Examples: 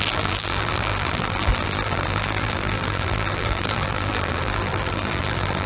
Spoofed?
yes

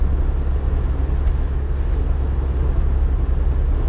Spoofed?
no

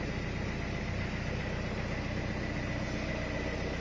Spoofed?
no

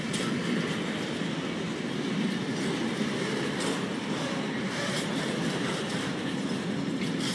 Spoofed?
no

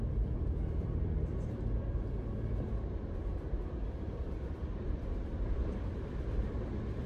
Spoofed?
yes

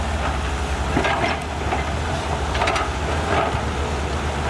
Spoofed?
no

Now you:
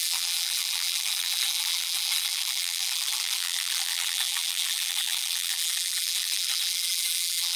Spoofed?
yes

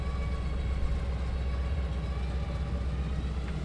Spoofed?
no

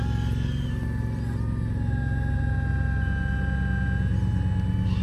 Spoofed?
no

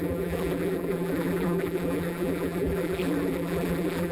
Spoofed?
yes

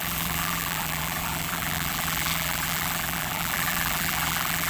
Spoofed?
yes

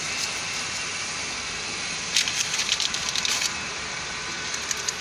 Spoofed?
no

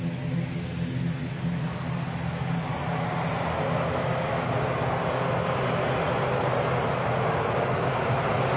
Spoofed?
no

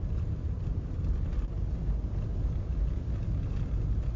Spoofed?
no